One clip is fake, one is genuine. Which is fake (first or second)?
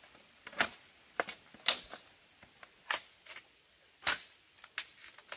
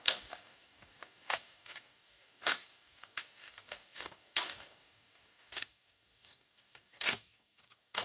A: second